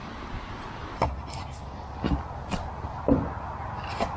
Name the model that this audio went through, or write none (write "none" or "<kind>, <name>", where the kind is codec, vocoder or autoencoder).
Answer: none